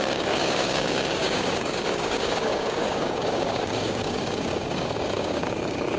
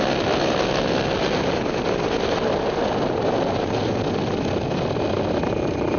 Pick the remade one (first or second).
first